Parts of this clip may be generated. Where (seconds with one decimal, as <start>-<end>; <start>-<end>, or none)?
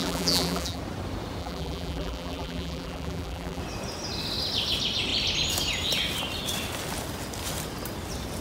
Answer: 0.0-0.8; 1.4-3.6